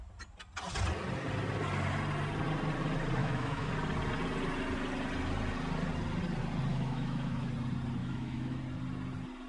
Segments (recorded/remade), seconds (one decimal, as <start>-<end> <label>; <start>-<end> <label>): 0.0-3.2 recorded; 3.2-3.7 remade; 3.7-6.7 recorded; 6.7-7.5 remade; 7.5-8.0 recorded; 8.0-8.6 remade; 8.6-9.5 recorded